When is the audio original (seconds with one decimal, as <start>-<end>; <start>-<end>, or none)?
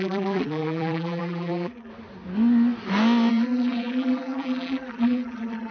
1.9-3.3